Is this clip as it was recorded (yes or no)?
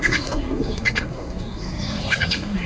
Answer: no